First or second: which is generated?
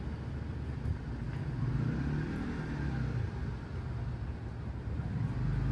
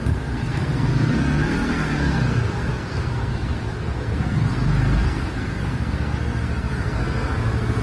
second